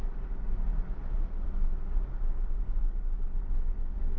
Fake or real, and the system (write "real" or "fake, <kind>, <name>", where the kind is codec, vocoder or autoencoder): real